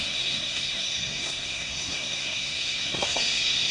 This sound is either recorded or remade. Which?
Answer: remade